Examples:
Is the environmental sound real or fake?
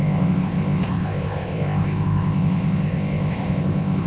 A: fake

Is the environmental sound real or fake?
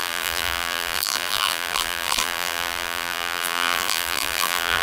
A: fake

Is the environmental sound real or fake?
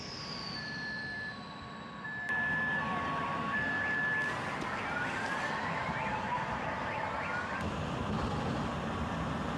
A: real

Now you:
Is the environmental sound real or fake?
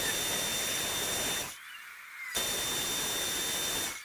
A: real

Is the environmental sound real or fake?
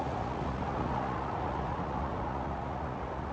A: fake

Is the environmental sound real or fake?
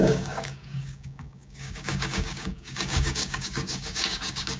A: fake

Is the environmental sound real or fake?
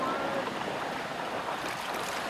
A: real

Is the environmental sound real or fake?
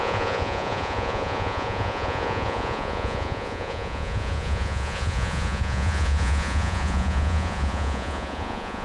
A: fake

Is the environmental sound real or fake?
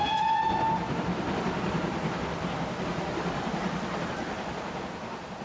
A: real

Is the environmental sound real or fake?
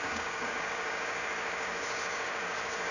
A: fake